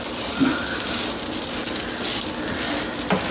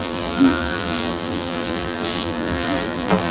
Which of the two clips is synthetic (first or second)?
second